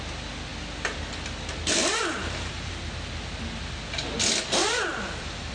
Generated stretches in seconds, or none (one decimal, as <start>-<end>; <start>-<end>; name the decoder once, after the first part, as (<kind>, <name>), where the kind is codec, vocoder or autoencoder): 1.8-2.7 (vocoder, BigVGAN v2); 4.6-5.5